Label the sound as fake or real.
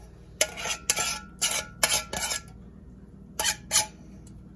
real